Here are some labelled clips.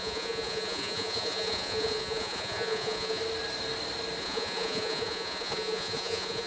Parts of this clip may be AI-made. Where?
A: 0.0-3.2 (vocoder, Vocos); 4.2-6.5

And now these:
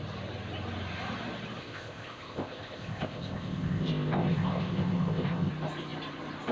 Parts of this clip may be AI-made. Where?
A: 1.6-5.5 (codec, ZipCodec)

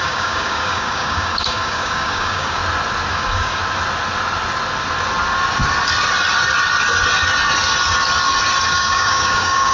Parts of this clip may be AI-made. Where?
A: 0.0-2.6 (codec, DAC); 3.1-3.6; 8.7-9.7

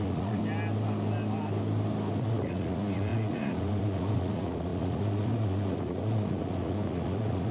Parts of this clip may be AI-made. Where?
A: 0.0-0.4 (vocoder, Vocos); 2.2-7.5

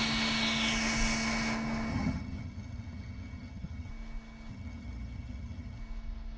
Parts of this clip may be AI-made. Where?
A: 1.9-3.9 (vocoder, HiFi-GAN); 4.5-5.8

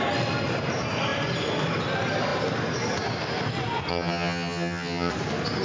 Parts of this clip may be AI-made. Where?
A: 3.9-5.1 (vocoder, HiFi-GAN)